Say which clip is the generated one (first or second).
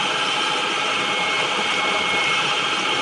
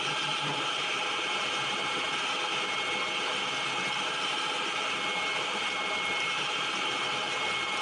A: first